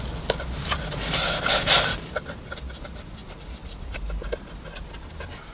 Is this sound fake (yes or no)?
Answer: no